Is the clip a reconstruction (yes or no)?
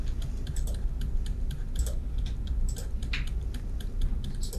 no